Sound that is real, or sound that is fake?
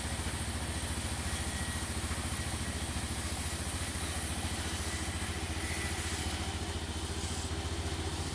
real